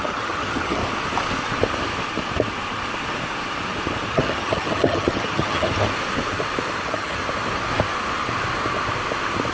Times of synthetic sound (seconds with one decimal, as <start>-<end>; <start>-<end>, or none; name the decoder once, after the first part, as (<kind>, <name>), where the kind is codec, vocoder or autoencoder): 0.0-0.8 (vocoder, HiFi-GAN); 4.1-5.7; 6.8-7.2